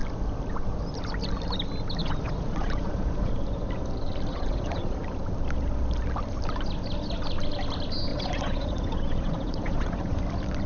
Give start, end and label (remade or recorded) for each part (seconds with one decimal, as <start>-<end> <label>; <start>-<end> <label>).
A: 0.0-2.0 recorded; 2.0-3.3 remade; 3.3-4.3 recorded; 4.3-5.0 remade; 5.0-8.1 recorded; 8.1-10.2 remade; 10.2-10.7 recorded